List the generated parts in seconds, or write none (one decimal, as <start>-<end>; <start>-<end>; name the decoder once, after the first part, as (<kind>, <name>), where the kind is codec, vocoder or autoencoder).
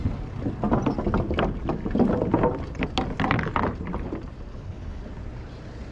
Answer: 4.5-5.0 (codec, HILCodec)